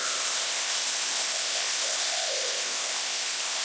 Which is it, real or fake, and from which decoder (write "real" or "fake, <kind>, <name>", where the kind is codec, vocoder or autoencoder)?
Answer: fake, codec, ZipCodec